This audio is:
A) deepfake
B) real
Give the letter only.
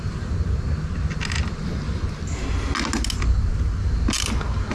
B